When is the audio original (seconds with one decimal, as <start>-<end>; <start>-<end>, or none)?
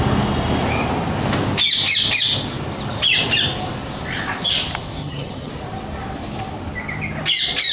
0.0-5.0; 5.5-7.7